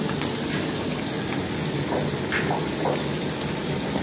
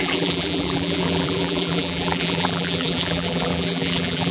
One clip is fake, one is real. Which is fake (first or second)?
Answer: second